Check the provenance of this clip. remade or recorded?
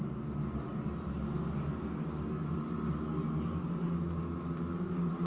recorded